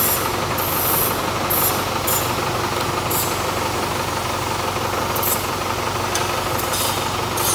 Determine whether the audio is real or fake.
real